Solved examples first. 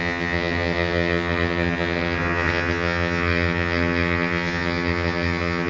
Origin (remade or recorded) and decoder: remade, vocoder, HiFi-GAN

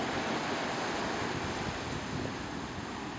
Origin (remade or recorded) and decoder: recorded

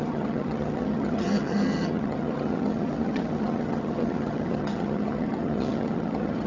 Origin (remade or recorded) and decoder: remade, vocoder, HiFi-GAN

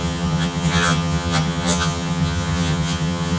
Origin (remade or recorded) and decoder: remade, vocoder, HiFi-GAN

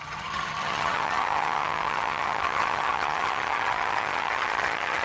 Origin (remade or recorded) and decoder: remade, vocoder, HiFi-GAN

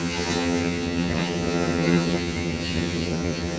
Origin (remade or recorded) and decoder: remade, vocoder, HiFi-GAN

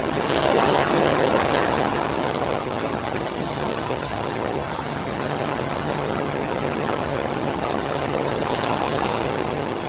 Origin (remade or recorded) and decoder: remade, vocoder, HiFi-GAN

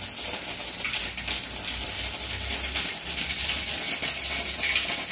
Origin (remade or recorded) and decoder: recorded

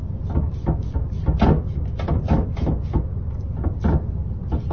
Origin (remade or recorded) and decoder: recorded